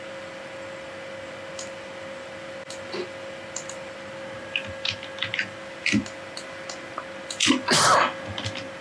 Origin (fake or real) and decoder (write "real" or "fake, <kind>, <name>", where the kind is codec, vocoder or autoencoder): real